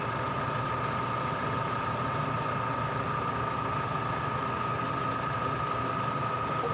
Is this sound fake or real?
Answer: real